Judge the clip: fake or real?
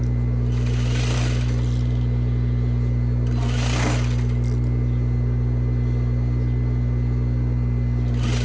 real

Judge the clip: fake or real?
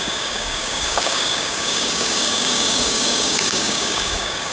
fake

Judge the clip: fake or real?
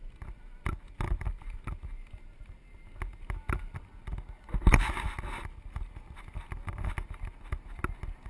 real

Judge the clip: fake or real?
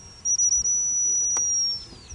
real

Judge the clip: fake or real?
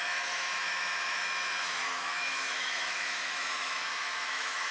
fake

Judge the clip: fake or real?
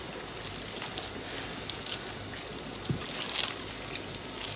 real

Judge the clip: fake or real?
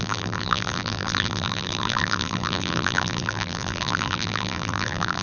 fake